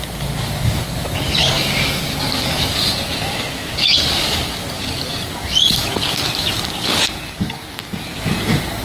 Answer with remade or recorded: remade